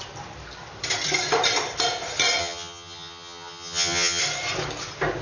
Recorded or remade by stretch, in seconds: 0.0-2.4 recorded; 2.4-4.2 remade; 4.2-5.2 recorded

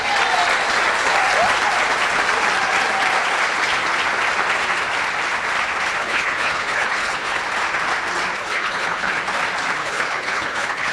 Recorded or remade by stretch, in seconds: 0.0-6.0 recorded; 6.0-7.4 remade; 7.4-8.4 recorded; 8.4-9.2 remade; 9.2-9.8 recorded; 9.8-10.9 remade

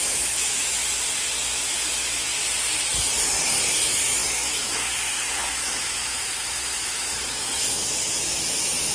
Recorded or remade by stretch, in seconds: 0.0-0.8 remade; 0.8-1.5 recorded; 1.5-2.3 remade; 2.3-3.7 recorded; 3.7-8.9 remade

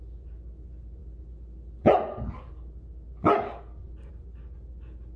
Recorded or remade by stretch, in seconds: 0.0-5.2 recorded

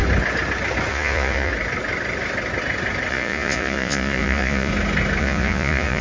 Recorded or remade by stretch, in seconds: 0.0-0.9 recorded; 0.9-1.5 remade; 1.5-3.1 recorded; 3.1-4.7 remade; 4.7-5.2 recorded; 5.2-6.0 remade

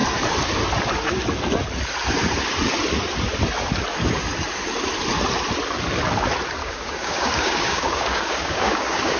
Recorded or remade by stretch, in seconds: 0.0-6.6 recorded; 6.6-9.2 remade